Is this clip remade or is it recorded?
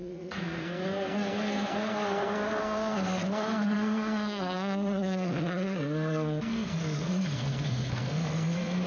remade